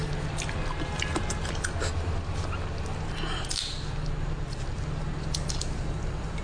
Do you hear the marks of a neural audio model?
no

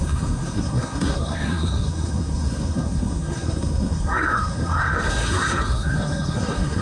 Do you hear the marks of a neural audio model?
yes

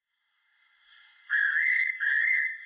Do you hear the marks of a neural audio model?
yes